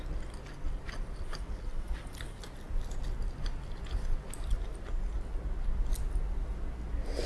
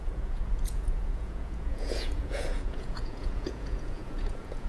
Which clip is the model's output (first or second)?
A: second